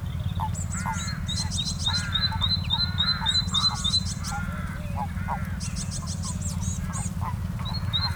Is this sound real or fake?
real